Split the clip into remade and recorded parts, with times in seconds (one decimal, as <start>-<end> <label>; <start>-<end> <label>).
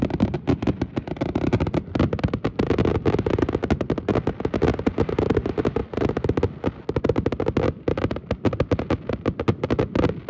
0.0-10.3 recorded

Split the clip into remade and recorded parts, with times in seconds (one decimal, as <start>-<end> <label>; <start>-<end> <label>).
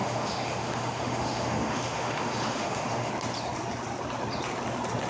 0.0-3.1 remade; 3.1-5.1 recorded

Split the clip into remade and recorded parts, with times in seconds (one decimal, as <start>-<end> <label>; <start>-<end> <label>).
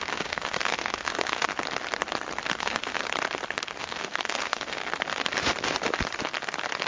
0.0-1.5 remade; 1.5-2.6 recorded; 2.6-3.0 remade; 3.0-3.8 recorded; 3.8-4.8 remade; 4.8-6.9 recorded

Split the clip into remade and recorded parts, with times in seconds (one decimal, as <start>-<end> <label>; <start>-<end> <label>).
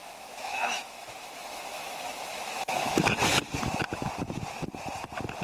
0.0-3.2 remade; 3.2-5.4 recorded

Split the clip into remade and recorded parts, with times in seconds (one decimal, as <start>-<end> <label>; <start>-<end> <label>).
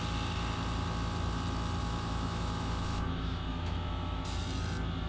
0.0-1.8 recorded; 1.8-4.2 remade; 4.2-5.1 recorded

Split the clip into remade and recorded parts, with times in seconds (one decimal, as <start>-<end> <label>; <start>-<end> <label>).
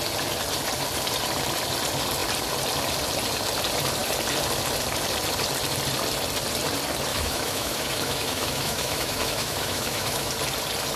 0.0-7.1 recorded; 7.1-10.3 remade; 10.3-11.0 recorded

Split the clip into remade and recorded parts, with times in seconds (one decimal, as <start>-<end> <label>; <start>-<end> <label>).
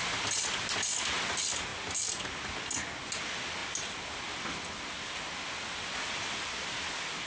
0.0-7.3 recorded